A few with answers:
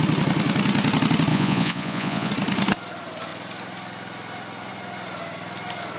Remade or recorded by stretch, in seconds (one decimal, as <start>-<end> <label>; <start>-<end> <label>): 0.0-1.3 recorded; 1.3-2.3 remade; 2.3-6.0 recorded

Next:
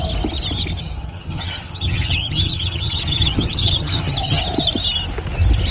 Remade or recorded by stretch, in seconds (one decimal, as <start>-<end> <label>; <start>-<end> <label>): 0.0-1.0 recorded; 1.0-4.4 remade; 4.4-5.7 recorded

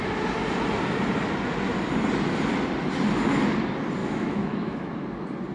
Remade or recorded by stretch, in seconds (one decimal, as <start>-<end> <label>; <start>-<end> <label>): 0.0-4.0 recorded; 4.0-4.9 remade; 4.9-5.5 recorded

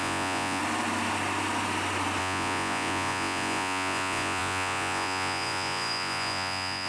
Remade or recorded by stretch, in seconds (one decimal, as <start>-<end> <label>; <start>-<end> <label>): 0.0-0.6 remade; 0.6-2.2 recorded; 2.2-6.9 remade

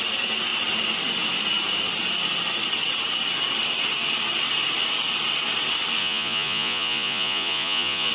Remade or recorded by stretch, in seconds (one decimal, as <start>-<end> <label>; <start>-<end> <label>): 0.0-6.0 recorded; 6.0-8.1 remade